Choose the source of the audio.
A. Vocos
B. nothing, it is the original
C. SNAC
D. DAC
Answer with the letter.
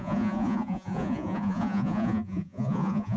A